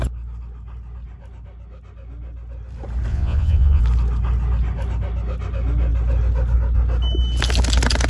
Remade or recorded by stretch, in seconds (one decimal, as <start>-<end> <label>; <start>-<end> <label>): 0.0-3.1 recorded; 3.1-3.8 remade; 3.8-8.1 recorded